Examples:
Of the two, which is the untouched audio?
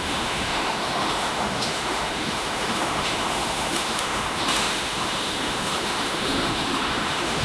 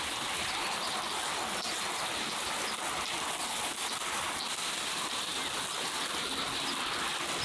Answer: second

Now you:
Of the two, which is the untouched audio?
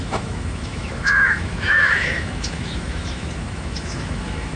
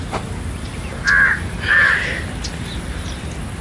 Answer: second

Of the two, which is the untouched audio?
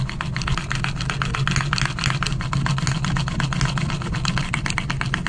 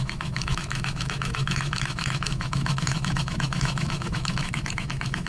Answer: first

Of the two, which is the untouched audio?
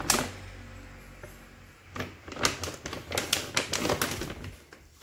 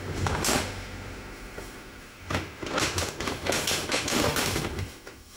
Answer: first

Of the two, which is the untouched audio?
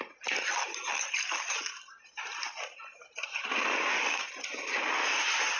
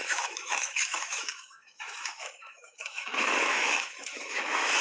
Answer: first